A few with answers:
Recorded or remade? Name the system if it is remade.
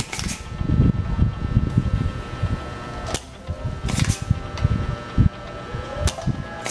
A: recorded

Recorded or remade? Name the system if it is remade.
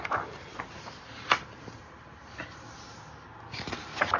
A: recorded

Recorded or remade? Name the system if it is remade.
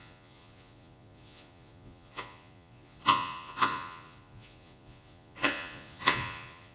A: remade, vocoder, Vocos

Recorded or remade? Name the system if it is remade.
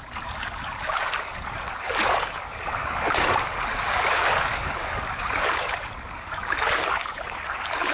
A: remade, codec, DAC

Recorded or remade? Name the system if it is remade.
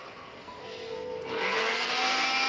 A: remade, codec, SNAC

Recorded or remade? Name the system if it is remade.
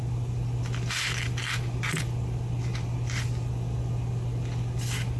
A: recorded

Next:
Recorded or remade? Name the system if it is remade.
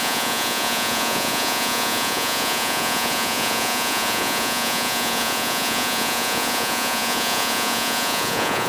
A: remade, vocoder, Vocos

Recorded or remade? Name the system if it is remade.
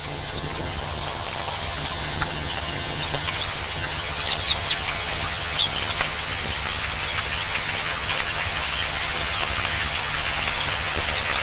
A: remade, vocoder, HiFi-GAN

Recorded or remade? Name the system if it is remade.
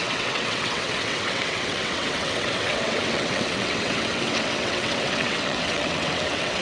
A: remade, vocoder, WaveNeXt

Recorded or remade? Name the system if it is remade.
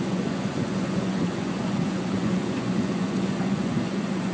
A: remade, vocoder, Vocos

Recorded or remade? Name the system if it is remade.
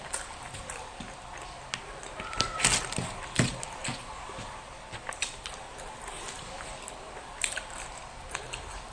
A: recorded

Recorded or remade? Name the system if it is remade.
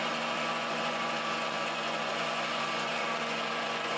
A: remade, vocoder, Vocos